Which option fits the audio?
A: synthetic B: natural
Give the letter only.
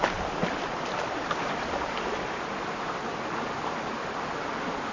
B